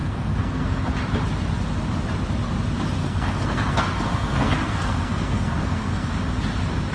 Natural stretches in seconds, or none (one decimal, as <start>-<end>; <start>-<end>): 0.8-3.0; 6.1-6.9